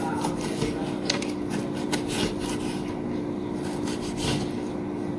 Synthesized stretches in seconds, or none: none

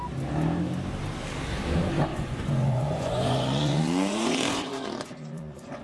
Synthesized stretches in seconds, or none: 2.1-5.8 (vocoder, Vocos)